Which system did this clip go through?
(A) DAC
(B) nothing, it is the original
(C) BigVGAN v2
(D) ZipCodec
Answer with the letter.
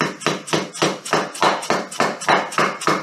B